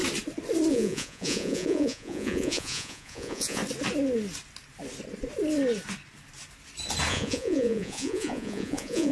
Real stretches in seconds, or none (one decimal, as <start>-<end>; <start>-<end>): 0.0-0.7; 3.6-7.1